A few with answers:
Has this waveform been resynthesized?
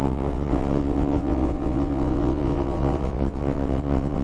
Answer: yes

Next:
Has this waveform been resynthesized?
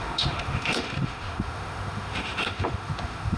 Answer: yes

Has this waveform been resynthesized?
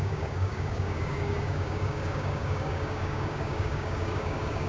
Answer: yes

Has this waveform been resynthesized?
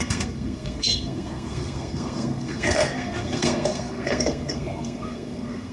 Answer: yes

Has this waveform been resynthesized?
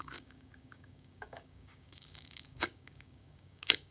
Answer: yes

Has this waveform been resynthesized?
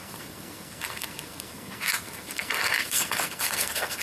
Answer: yes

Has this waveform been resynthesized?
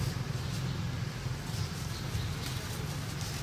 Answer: no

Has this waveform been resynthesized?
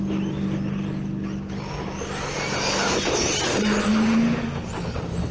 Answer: no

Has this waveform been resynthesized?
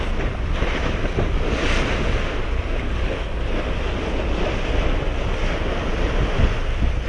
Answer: no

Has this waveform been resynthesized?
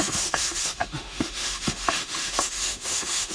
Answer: yes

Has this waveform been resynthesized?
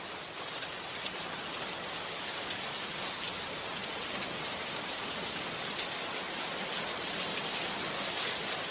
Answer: no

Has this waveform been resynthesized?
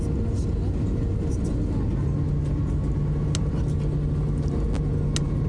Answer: no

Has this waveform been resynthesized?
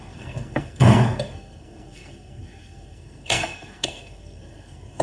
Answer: yes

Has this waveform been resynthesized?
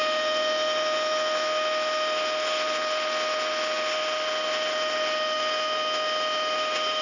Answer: yes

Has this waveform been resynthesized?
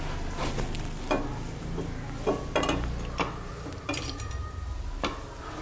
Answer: no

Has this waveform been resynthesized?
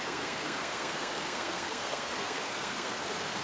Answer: yes